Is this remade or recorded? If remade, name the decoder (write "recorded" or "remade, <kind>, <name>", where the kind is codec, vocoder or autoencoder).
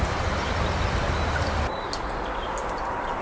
recorded